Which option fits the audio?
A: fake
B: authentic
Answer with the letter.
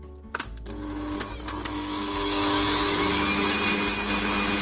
B